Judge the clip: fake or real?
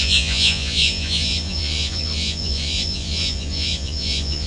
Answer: fake